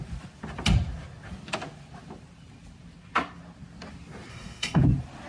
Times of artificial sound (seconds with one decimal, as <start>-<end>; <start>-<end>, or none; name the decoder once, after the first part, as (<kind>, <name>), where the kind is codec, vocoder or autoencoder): 4.3-4.8 (codec, SNAC)